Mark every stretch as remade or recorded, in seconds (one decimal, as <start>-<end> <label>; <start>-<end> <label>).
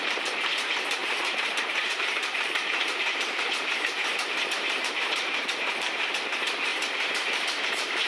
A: 0.0-8.1 remade